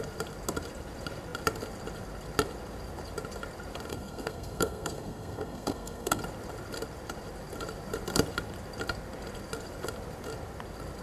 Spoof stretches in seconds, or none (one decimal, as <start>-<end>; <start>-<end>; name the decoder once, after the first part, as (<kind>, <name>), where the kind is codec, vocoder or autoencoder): 3.9-6.2 (codec, SNAC)